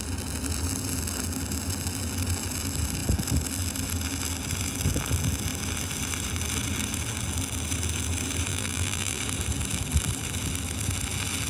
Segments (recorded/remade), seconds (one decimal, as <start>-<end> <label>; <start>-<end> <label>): 0.0-8.5 recorded; 8.5-9.2 remade; 9.2-11.5 recorded